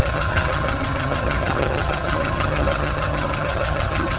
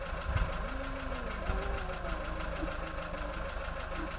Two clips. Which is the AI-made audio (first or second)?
first